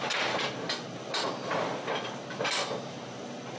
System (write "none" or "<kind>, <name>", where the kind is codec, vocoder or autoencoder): none